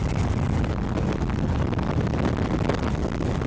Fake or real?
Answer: real